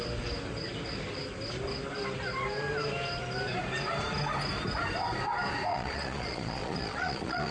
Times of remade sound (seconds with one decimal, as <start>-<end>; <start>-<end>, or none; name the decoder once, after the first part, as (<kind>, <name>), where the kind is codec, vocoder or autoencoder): 5.7-7.5 (vocoder, Vocos)